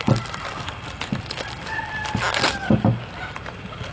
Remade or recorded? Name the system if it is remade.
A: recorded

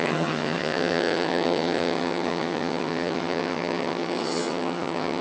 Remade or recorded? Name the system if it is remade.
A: remade, vocoder, HiFi-GAN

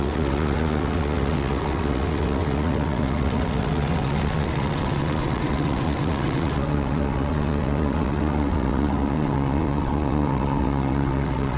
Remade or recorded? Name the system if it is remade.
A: remade, vocoder, WaveNeXt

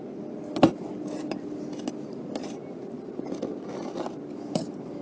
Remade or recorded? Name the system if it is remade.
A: recorded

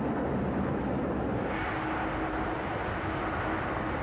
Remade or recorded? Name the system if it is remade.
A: recorded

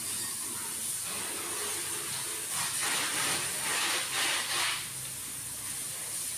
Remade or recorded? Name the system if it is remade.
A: recorded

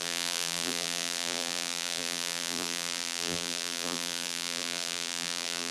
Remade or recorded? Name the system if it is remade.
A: remade, vocoder, BigVGAN v2